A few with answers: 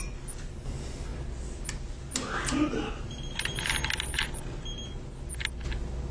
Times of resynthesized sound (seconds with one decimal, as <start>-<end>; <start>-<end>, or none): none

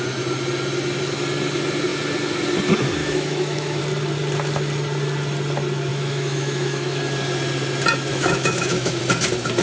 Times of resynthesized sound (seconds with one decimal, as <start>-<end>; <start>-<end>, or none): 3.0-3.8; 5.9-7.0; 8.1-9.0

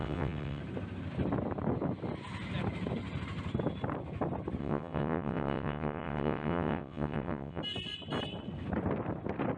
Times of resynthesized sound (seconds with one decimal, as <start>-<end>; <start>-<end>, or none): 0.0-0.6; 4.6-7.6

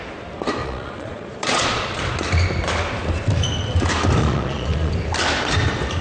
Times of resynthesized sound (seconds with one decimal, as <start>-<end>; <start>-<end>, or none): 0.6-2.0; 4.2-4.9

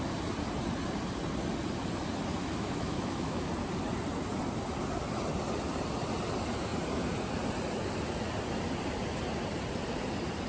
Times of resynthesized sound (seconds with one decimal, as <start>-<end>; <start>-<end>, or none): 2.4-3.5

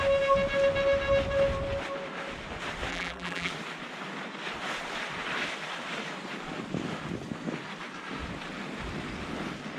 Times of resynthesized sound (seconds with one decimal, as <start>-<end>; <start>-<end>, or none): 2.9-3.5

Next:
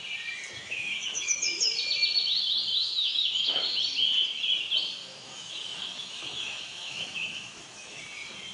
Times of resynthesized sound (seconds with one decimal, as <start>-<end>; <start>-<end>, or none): 0.6-1.7; 2.7-3.8; 5.0-8.0